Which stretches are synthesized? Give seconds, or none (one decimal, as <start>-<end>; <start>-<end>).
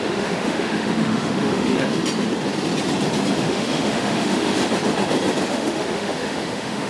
0.0-2.0; 3.4-4.6; 5.5-6.9